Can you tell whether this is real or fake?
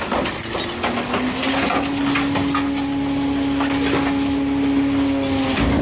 real